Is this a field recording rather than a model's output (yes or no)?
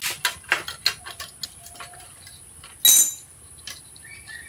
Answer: yes